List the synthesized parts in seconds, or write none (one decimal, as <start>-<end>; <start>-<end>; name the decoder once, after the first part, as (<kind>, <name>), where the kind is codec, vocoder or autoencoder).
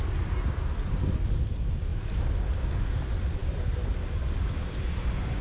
none